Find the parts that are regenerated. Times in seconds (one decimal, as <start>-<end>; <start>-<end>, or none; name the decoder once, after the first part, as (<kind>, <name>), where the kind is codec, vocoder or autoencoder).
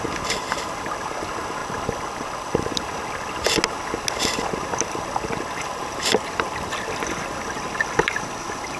1.6-2.9 (vocoder, BigVGAN v2)